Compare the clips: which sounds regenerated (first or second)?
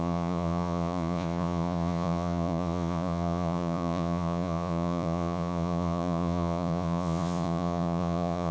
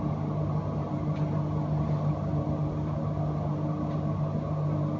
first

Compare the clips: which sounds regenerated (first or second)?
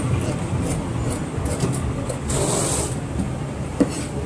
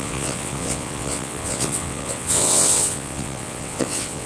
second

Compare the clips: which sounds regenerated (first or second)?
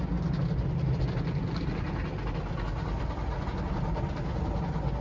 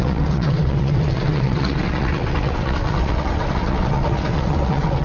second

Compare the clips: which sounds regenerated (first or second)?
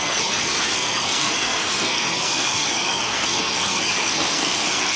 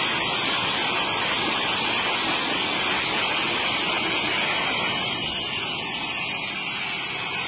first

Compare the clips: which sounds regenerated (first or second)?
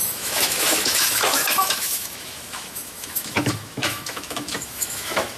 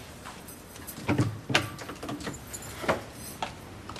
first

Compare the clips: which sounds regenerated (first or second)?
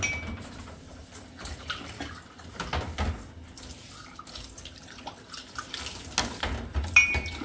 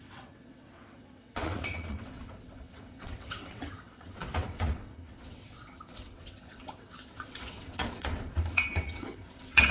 second